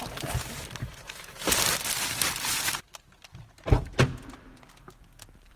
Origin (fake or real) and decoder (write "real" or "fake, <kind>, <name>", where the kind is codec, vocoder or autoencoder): fake, vocoder, BigVGAN v2